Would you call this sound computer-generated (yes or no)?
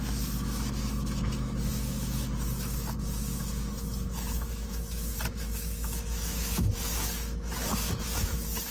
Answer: yes